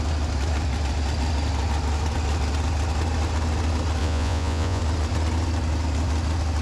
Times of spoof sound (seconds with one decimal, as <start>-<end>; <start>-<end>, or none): 4.0-4.8